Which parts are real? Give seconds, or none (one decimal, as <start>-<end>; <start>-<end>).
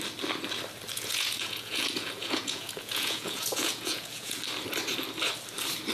0.0-0.9; 4.4-5.9